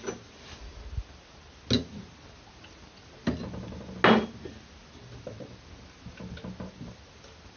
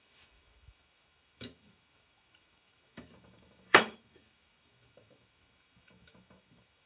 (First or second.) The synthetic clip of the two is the second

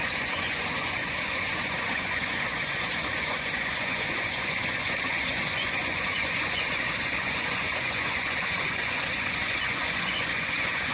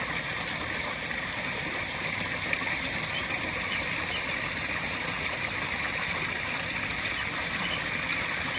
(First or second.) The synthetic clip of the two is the first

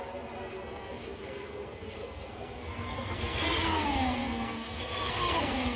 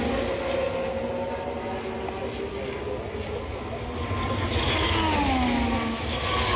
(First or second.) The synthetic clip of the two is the first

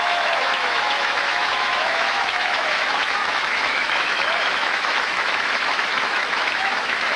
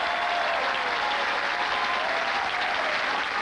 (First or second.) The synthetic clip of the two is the first